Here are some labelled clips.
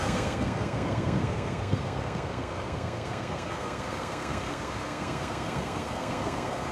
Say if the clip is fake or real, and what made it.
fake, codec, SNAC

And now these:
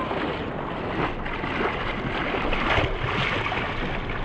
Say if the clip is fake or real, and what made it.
real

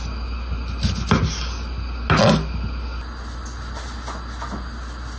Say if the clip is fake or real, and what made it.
real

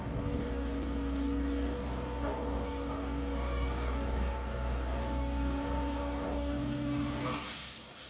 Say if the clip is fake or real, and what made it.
fake, codec, DAC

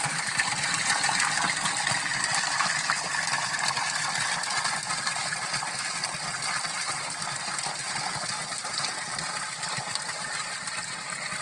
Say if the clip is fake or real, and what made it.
real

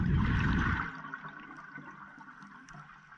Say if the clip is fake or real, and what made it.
real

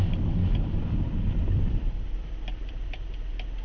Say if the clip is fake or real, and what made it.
fake, vocoder, BigVGAN v2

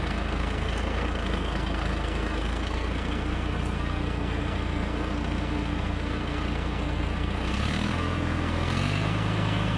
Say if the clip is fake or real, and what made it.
fake, codec, SNAC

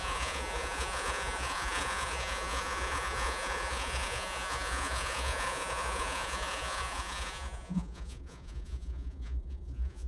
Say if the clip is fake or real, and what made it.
fake, vocoder, Vocos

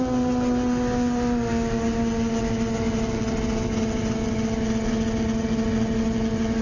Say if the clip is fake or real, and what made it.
real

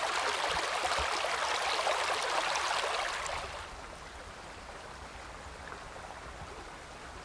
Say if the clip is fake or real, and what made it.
real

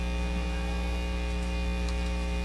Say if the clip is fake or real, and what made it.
fake, autoencoder, DAC-VAE